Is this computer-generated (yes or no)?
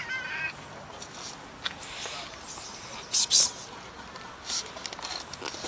no